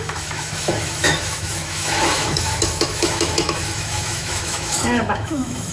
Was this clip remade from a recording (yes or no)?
yes